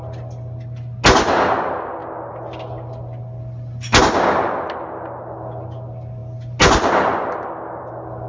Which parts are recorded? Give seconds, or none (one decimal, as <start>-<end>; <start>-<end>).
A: 0.0-8.3